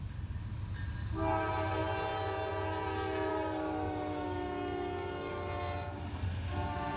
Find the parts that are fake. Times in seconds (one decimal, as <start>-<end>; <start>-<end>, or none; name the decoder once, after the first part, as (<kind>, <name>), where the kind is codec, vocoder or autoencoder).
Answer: 3.3-5.3 (codec, DAC)